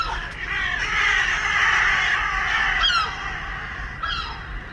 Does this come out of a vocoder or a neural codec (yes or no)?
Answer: yes